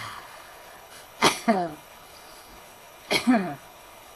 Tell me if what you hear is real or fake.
fake